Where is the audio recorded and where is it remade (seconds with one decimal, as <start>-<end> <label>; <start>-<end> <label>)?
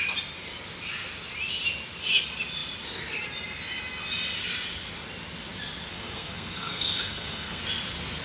0.0-5.9 recorded; 5.9-7.6 remade; 7.6-8.2 recorded